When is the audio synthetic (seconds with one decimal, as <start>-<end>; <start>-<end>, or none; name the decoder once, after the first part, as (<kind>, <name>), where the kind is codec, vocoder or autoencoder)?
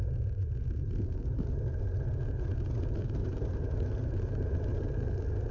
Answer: 3.2-4.7 (vocoder, BigVGAN v2)